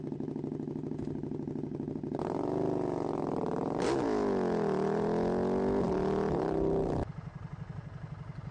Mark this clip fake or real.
real